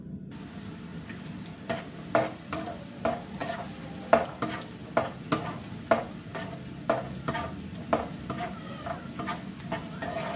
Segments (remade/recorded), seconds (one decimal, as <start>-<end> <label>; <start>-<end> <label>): 0.0-10.4 recorded